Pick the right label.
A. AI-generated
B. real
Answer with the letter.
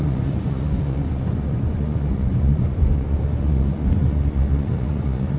A